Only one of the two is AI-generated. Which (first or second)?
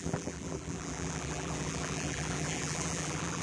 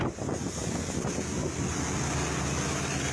first